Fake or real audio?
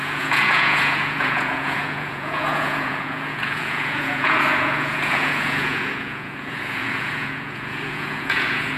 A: fake